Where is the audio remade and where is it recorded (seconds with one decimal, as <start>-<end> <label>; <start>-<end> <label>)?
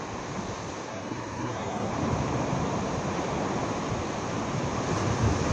0.0-0.9 recorded; 0.9-1.9 remade; 1.9-5.5 recorded